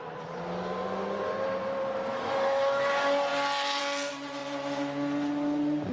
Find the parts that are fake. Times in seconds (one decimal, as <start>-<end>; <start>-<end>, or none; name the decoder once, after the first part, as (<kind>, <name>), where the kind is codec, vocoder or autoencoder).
2.1-2.9 (autoencoder, DAC-VAE)